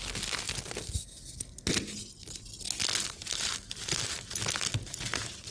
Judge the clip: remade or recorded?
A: recorded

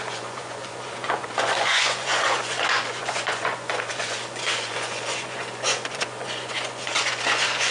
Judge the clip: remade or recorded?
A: remade